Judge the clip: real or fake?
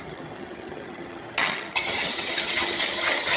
fake